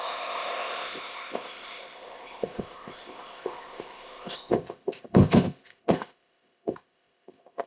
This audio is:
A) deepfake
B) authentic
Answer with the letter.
A